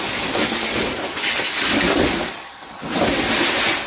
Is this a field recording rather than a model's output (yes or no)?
yes